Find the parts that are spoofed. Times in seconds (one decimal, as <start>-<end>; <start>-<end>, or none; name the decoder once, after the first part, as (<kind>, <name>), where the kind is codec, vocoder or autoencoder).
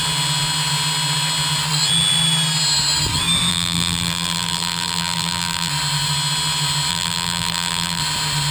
3.5-5.7 (vocoder, BigVGAN v2); 6.9-8.0